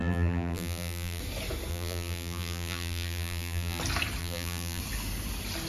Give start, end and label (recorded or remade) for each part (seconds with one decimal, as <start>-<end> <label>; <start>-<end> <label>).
0.0-1.2 remade; 1.2-1.7 recorded; 1.7-3.8 remade; 3.8-4.2 recorded; 4.2-4.8 remade; 4.8-5.7 recorded